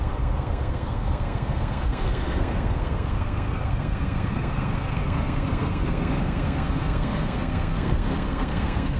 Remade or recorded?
remade